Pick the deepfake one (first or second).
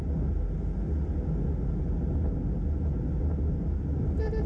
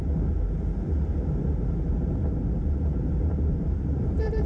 second